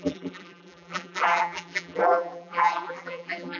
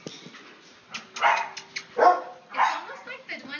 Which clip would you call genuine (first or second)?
second